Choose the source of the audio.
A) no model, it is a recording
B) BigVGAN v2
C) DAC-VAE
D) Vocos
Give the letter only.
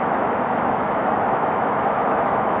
C